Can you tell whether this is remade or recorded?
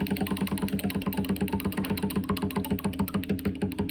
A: recorded